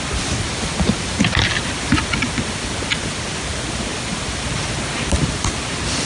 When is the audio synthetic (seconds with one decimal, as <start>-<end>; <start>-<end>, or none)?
none